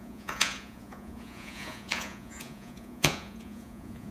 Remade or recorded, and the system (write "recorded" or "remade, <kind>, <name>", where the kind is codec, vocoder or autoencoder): remade, vocoder, Vocos